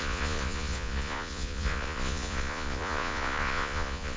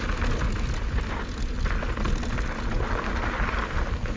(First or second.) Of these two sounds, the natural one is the second